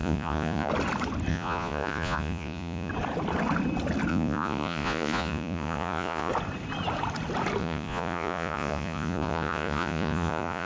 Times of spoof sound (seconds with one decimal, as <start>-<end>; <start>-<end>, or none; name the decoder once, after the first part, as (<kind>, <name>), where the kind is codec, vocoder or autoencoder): 0.0-0.7 (vocoder, Vocos); 1.3-2.9; 4.1-6.3; 7.6-10.7